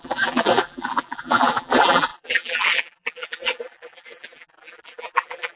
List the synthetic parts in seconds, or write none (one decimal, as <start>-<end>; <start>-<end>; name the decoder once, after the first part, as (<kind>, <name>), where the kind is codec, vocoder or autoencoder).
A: 0.0-5.6 (vocoder, BigVGAN v2)